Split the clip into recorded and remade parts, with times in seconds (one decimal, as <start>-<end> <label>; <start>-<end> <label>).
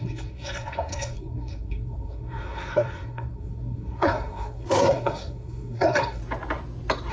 0.0-6.2 remade; 6.2-7.1 recorded